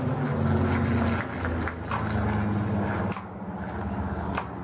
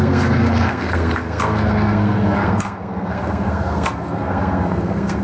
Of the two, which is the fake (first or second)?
second